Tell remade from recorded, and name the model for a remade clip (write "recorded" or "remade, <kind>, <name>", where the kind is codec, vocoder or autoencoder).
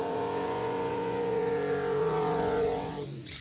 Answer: remade, vocoder, Vocos